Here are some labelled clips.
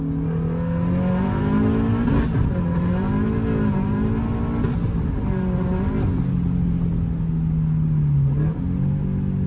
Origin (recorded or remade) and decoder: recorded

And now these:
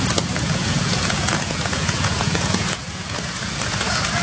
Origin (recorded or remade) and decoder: remade, vocoder, Vocos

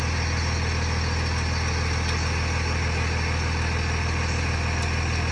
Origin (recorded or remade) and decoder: recorded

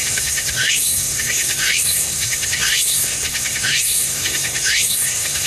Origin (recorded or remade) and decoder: remade, codec, SNAC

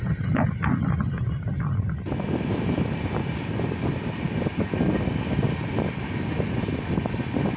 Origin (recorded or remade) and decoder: recorded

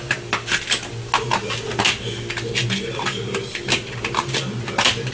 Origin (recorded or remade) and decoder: recorded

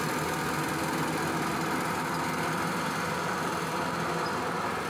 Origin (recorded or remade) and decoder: recorded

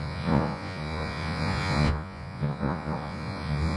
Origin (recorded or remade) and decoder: remade, vocoder, Vocos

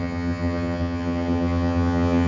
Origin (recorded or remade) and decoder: remade, vocoder, HiFi-GAN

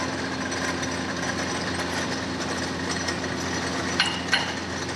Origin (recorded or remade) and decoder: recorded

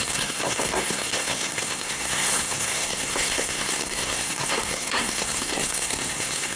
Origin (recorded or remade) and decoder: remade, codec, SNAC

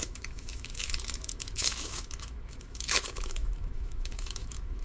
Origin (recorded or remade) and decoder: remade, autoencoder, DAC-VAE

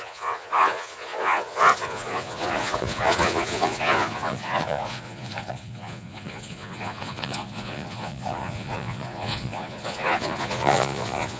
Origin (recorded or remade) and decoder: remade, vocoder, Vocos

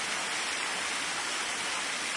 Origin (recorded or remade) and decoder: recorded